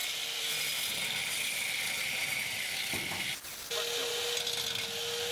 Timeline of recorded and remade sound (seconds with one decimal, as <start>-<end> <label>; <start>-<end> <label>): 0.0-3.2 remade; 3.2-5.3 recorded